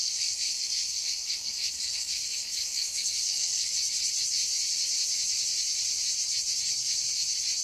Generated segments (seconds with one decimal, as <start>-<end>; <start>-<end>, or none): 0.0-3.7